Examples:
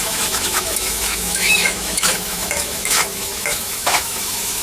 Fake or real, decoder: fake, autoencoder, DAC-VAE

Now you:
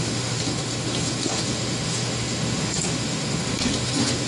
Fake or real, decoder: fake, autoencoder, DAC-VAE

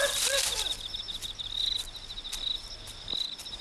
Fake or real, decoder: real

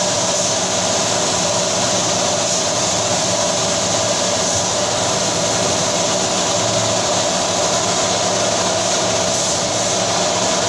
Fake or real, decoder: real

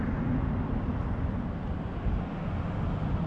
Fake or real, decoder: real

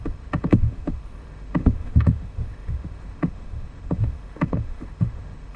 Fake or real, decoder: fake, autoencoder, DAC-VAE